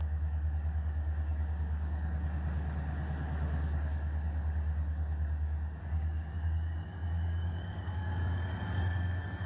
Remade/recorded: remade